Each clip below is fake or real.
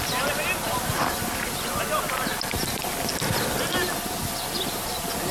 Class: real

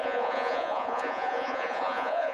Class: fake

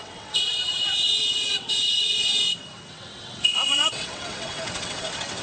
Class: fake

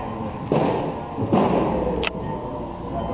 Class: real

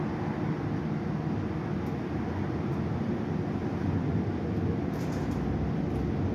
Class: real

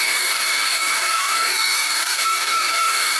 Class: fake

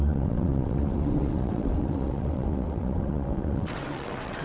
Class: fake